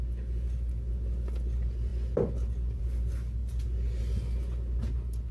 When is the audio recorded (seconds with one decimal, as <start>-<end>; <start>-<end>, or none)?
0.0-1.9; 2.8-5.3